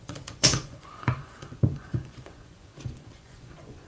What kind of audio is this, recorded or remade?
remade